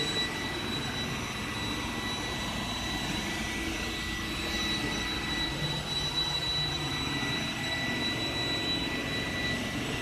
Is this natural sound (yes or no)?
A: yes